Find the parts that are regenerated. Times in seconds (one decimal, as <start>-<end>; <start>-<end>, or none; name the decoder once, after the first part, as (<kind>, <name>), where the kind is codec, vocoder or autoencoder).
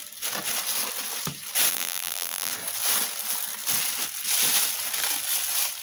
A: 1.7-2.5 (vocoder, BigVGAN v2)